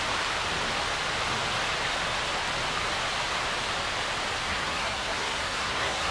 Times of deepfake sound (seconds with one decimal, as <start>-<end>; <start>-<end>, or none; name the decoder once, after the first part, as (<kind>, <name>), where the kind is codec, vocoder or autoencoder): 4.5-6.1 (codec, SNAC)